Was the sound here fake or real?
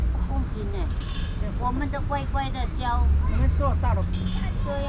real